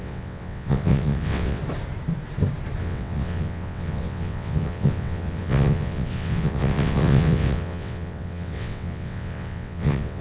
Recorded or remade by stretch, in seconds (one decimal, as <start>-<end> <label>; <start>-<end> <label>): 0.0-1.6 remade; 1.6-2.8 recorded; 2.8-10.2 remade